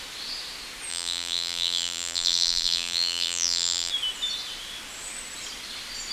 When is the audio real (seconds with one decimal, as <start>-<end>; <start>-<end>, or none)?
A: 0.0-0.9; 3.9-6.1